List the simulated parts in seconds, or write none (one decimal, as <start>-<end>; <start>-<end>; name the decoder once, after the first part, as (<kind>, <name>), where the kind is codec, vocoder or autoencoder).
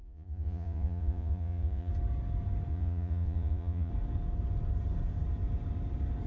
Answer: 0.0-1.9 (vocoder, Vocos); 2.7-3.9